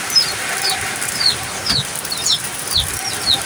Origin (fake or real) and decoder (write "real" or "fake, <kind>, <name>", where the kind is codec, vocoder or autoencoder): real